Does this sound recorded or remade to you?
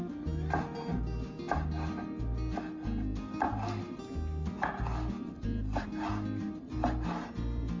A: recorded